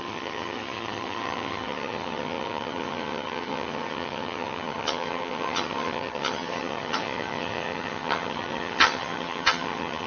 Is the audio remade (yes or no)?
yes